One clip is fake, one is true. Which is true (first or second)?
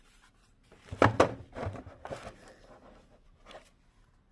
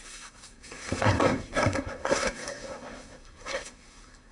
first